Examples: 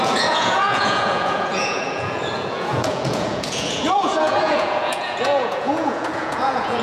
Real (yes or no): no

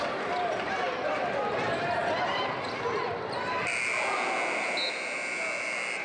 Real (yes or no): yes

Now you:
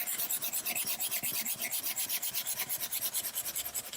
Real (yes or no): yes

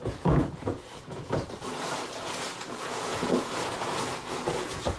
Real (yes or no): no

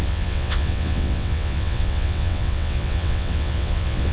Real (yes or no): no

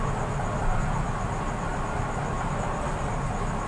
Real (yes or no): yes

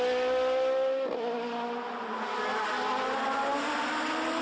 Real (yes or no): yes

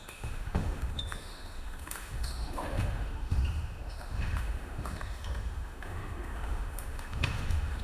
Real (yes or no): no